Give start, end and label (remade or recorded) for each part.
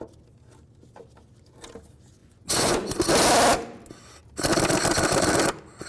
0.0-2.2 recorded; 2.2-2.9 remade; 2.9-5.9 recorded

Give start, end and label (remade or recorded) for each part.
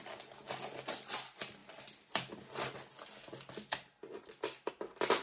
0.0-5.2 recorded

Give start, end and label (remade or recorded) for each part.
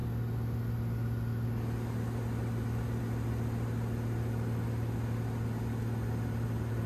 0.0-6.9 recorded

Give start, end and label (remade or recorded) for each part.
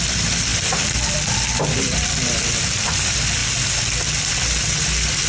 0.0-3.4 remade; 3.4-4.4 recorded; 4.4-5.3 remade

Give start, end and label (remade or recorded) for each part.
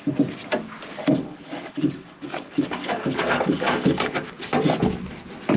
0.0-1.0 recorded; 1.0-4.3 remade; 4.3-5.6 recorded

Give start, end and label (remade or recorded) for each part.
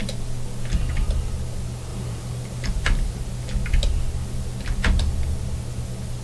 0.0-1.9 recorded; 1.9-3.2 remade; 3.2-6.2 recorded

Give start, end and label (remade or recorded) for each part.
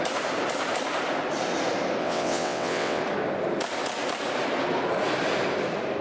0.0-2.0 recorded; 2.0-3.0 remade; 3.0-6.0 recorded